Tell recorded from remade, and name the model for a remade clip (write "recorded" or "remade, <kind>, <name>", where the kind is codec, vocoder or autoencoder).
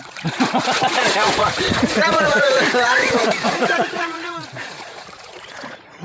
remade, vocoder, Vocos